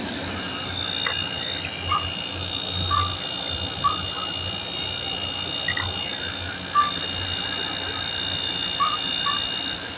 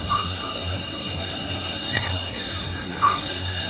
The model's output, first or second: second